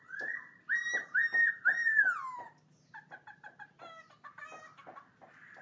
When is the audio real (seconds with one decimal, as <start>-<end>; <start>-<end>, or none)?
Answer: 0.0-5.6